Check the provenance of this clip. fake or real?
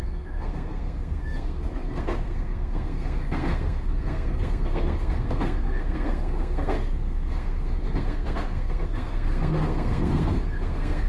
fake